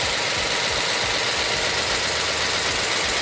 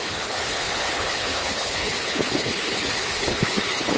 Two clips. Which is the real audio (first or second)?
first